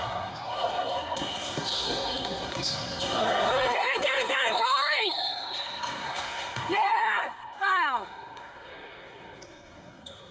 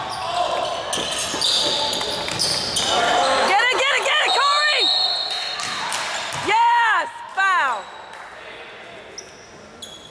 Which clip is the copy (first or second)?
first